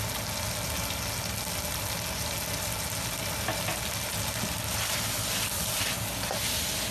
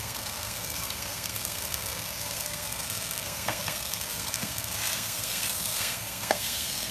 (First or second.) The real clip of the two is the first